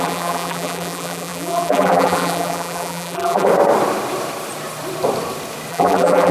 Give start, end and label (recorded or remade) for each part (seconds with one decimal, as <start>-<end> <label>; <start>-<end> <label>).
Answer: 0.0-3.5 remade; 3.5-5.7 recorded; 5.7-6.3 remade